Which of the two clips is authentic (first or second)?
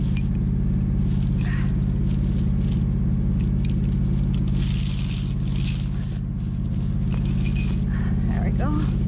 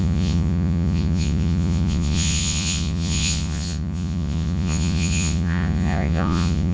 first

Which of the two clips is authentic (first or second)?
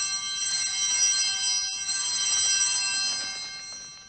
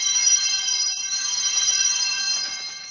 first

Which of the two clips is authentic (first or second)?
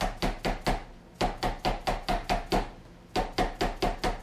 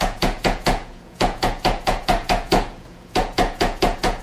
first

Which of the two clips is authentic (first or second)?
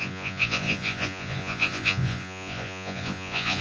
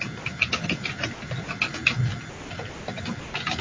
second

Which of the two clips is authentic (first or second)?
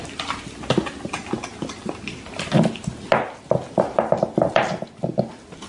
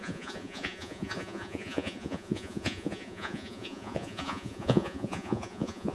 first